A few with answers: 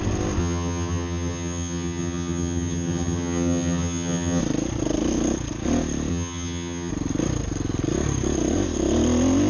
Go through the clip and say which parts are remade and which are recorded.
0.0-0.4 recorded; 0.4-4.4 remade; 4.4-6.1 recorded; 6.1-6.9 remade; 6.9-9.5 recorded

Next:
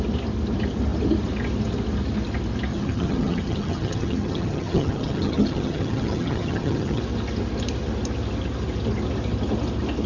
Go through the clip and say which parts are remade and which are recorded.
0.0-2.7 recorded; 2.7-7.0 remade; 7.0-10.1 recorded

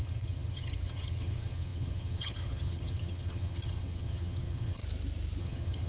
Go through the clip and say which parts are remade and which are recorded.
0.0-4.8 remade; 4.8-5.4 recorded; 5.4-5.9 remade

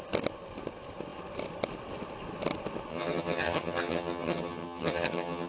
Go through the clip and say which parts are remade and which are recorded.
0.0-2.9 recorded; 2.9-5.5 remade

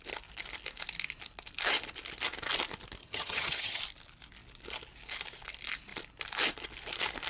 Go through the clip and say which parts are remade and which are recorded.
0.0-3.0 recorded; 3.0-3.8 remade; 3.8-7.3 recorded